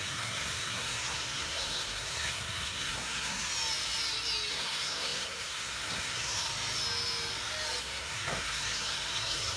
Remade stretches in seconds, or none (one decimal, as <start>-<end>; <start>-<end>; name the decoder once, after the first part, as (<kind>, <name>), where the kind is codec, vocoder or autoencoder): 0.0-3.4 (codec, SNAC); 4.5-6.5; 7.8-9.6

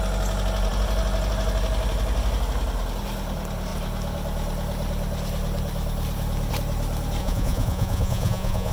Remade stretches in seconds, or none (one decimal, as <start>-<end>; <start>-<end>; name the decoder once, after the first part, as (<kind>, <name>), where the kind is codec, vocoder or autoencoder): 7.2-8.7 (vocoder, Vocos)

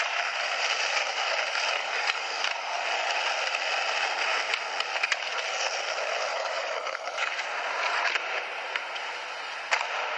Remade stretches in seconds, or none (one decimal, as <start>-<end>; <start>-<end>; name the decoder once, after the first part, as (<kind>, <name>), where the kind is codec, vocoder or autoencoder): 1.8-2.8 (codec, DAC); 6.3-7.3

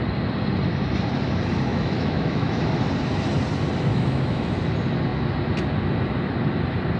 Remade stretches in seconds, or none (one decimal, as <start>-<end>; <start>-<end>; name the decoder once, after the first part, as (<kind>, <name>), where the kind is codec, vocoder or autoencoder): 1.7-2.6 (autoencoder, DAC-VAE); 3.9-4.5

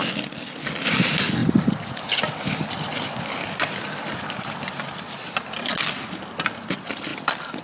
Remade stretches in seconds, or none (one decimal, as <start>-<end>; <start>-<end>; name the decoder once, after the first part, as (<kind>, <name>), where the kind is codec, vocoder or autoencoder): none

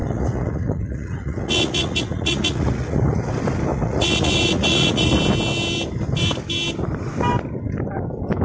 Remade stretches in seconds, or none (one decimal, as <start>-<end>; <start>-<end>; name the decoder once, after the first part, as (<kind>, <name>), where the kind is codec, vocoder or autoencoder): 0.0-3.3 (vocoder, Vocos); 3.7-5.2

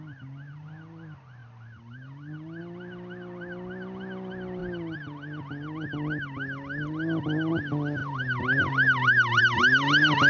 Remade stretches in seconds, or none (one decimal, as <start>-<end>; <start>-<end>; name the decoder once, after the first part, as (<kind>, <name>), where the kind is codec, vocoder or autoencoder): none

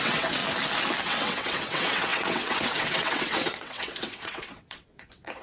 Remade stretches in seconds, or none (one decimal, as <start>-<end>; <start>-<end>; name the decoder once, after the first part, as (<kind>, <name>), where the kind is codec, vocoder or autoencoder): 0.0-0.4 (vocoder, WaveNeXt); 1.0-5.4